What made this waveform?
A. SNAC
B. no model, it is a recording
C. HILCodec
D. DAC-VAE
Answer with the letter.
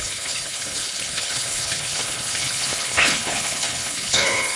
C